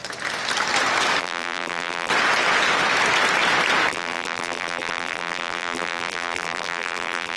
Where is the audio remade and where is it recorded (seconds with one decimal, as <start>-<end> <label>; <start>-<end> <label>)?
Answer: 0.0-1.2 recorded; 1.2-2.1 remade; 2.1-3.9 recorded; 3.9-7.4 remade